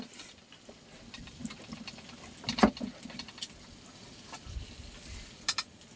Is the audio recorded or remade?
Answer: recorded